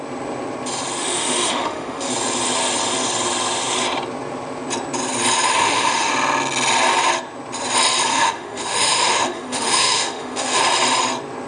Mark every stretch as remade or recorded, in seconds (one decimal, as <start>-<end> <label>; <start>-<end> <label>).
0.0-1.0 recorded; 1.0-2.1 remade; 2.1-5.6 recorded; 5.6-6.1 remade; 6.1-8.1 recorded; 8.1-10.6 remade; 10.6-11.5 recorded